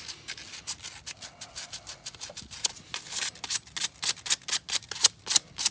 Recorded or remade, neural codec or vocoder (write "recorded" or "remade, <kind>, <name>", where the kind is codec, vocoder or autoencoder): recorded